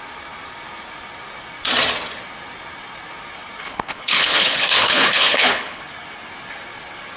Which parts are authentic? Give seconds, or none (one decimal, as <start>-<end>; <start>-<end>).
0.0-3.6; 5.8-7.2